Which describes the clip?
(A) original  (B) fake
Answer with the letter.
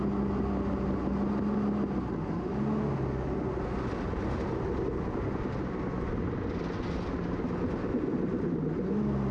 A